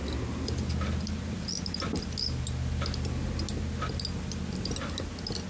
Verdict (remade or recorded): recorded